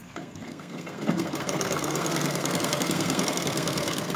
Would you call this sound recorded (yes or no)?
no